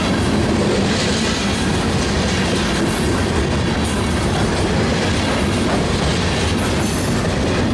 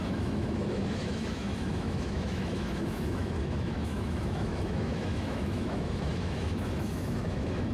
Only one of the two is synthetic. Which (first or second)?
second